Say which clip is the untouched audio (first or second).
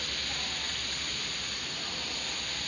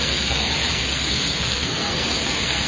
first